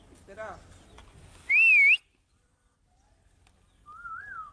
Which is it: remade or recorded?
recorded